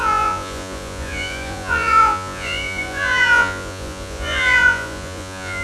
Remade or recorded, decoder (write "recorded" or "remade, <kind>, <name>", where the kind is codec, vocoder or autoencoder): remade, vocoder, Vocos